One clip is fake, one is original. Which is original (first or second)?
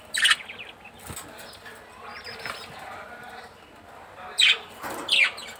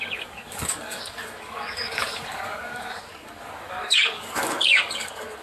first